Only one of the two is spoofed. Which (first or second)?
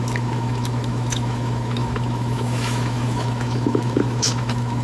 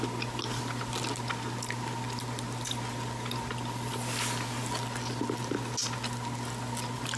first